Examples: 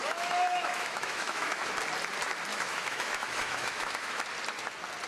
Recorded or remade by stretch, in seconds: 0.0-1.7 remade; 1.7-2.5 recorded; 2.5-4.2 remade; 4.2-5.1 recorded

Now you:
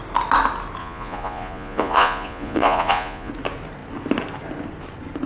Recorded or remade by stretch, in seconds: 0.0-0.8 recorded; 0.8-3.3 remade; 3.3-5.3 recorded

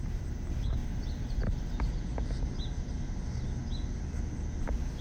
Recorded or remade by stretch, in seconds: 0.0-0.8 remade; 0.8-2.4 recorded; 2.4-3.6 remade; 3.6-5.0 recorded

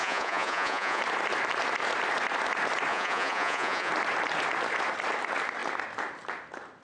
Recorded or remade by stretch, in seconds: 0.0-1.0 remade; 1.0-2.9 recorded; 2.9-3.9 remade; 3.9-6.8 recorded

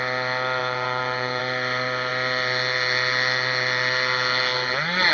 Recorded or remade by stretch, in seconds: 0.0-0.6 recorded; 0.6-1.4 remade; 1.4-5.1 recorded